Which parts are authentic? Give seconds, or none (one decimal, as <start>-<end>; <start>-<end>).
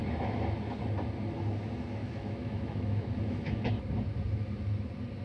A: 0.0-2.0; 3.7-5.2